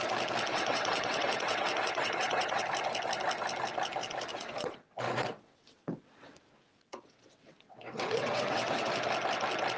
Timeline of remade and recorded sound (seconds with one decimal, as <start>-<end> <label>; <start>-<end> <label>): 0.0-0.5 recorded; 0.5-2.6 remade; 2.6-4.3 recorded; 4.3-6.3 remade; 6.3-6.7 recorded; 6.7-8.9 remade; 8.9-9.8 recorded